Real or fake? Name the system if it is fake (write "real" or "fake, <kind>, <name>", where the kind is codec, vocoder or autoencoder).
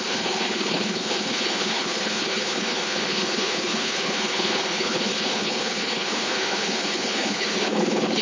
fake, codec, HILCodec